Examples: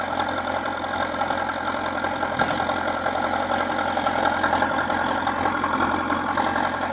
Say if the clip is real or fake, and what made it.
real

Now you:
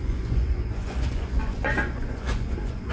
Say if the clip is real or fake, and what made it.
fake, vocoder, Vocos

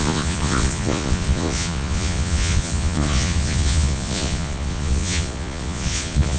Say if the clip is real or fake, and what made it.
fake, vocoder, Vocos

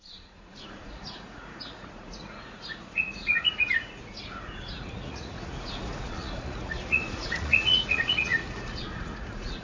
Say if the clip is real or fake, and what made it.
fake, vocoder, Vocos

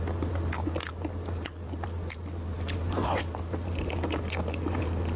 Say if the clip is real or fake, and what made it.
real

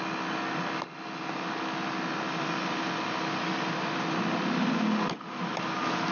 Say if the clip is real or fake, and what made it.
real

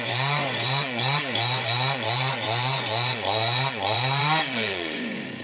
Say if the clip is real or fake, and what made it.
fake, vocoder, Vocos